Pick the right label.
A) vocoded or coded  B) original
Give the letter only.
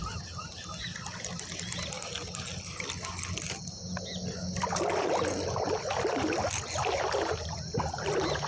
B